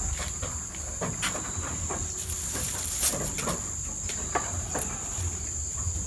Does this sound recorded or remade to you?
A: recorded